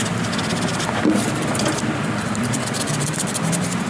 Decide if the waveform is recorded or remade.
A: remade